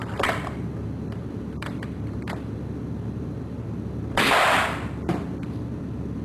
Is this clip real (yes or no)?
yes